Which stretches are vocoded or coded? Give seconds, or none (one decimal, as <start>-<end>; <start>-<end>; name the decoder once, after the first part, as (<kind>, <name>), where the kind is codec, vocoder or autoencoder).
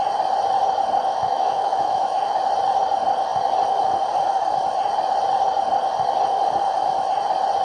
1.1-2.4 (autoencoder, DAC-VAE)